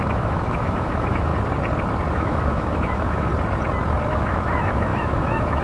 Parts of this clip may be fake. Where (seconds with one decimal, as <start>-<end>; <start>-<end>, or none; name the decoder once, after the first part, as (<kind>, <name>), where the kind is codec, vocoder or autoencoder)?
0.0-1.3 (autoencoder, DAC-VAE); 2.1-3.3; 4.1-5.6